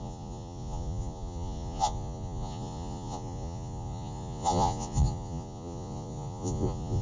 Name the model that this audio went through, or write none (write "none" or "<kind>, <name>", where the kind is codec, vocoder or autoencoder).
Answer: vocoder, Vocos